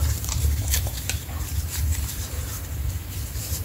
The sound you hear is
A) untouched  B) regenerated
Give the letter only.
B